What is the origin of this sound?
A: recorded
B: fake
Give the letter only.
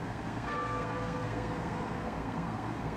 B